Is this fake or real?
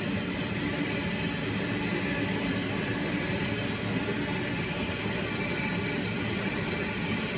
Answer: real